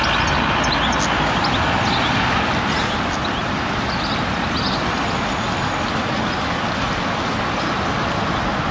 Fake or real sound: real